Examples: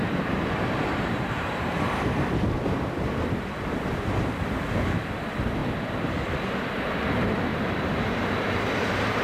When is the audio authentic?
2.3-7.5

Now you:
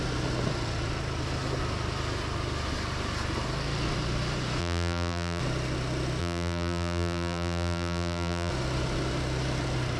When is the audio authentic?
0.0-4.6; 5.4-6.2; 8.5-10.0

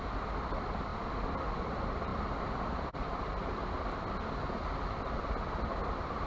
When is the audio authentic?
0.0-6.3

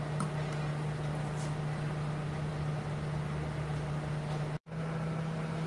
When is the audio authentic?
0.0-0.7; 1.6-5.7